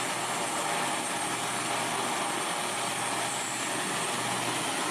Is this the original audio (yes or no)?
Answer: yes